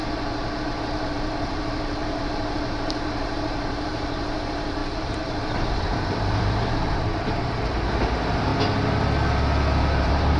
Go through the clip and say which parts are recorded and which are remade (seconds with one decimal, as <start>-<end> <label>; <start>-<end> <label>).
0.0-8.5 remade; 8.5-10.0 recorded; 10.0-10.4 remade